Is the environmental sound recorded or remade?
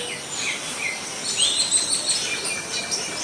recorded